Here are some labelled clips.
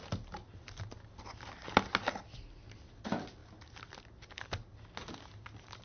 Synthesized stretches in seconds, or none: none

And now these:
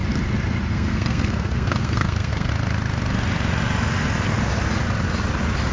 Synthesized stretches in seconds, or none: 0.7-2.5

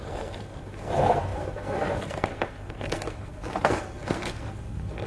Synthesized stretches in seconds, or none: 0.0-5.1

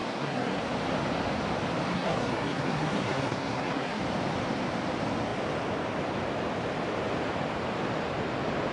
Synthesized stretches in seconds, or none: 0.0-0.6; 1.9-4.0

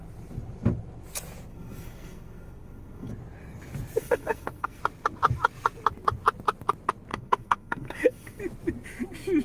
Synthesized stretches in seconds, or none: 1.5-3.1; 4.0-4.8; 7.1-8.4

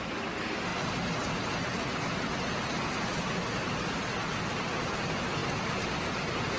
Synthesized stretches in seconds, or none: none

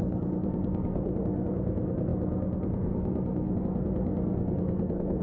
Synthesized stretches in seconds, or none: 0.0-5.2

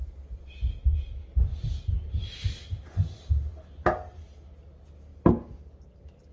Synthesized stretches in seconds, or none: none